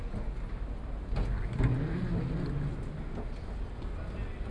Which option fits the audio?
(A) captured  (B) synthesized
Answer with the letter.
A